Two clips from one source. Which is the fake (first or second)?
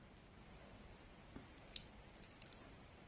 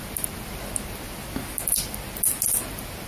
first